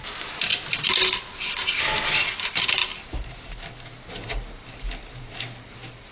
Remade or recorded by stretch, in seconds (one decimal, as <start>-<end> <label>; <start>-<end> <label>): 0.0-6.1 recorded